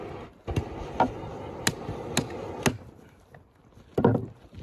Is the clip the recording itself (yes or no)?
yes